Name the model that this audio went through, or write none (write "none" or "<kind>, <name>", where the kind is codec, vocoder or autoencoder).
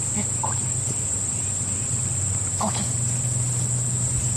none